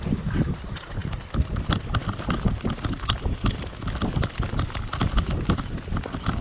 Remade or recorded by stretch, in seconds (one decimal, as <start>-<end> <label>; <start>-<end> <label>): 0.0-6.4 recorded